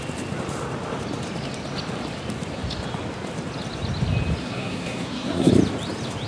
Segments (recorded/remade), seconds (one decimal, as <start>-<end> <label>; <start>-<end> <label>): 0.0-4.4 recorded; 4.4-5.5 remade; 5.5-6.3 recorded

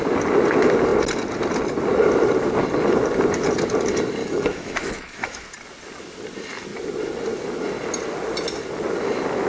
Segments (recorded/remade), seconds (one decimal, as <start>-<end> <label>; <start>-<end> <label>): 0.0-4.2 recorded; 4.2-5.4 remade; 5.4-9.5 recorded

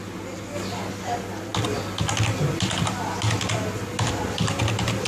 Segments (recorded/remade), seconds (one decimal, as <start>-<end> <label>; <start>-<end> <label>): 0.0-5.1 recorded

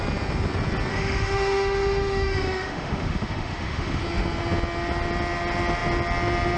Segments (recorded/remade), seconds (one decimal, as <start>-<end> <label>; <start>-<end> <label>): 0.0-0.9 recorded; 0.9-4.0 remade; 4.0-6.6 recorded

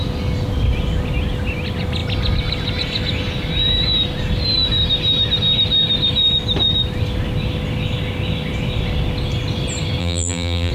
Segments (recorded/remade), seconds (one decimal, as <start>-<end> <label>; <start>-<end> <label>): 0.0-10.0 recorded; 10.0-10.7 remade

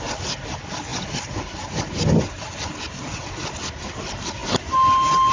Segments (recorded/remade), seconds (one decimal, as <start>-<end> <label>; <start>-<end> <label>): 0.0-5.3 recorded

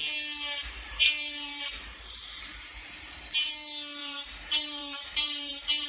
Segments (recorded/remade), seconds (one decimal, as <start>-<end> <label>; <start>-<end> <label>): 0.0-0.6 recorded; 0.6-3.5 remade; 3.5-4.0 recorded; 4.0-5.5 remade; 5.5-5.9 recorded